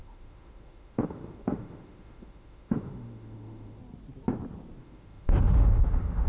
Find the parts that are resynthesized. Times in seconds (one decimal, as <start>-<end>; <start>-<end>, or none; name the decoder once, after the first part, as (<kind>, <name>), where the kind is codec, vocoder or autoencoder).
0.0-3.8 (autoencoder, DAC-VAE); 4.8-6.3